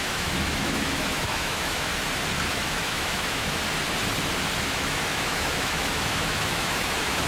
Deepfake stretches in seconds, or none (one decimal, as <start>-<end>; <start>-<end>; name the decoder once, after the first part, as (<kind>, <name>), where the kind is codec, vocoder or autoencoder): 0.0-1.9 (autoencoder, DAC-VAE); 2.5-3.6; 4.6-7.3